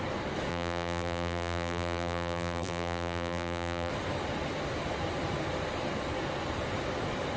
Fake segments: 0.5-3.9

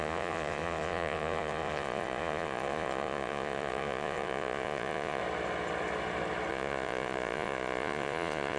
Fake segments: 0.0-5.2; 6.5-8.6

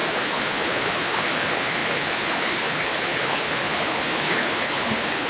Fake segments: 0.0-5.3

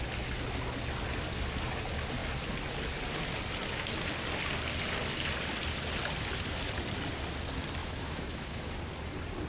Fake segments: 7.8-8.7

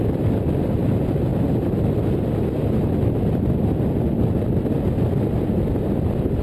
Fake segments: none

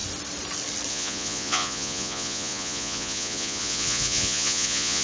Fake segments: 0.9-5.0